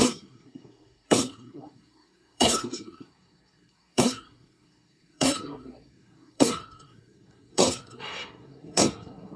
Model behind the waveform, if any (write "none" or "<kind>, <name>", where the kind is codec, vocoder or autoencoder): codec, SNAC